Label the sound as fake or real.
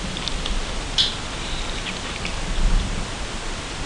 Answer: real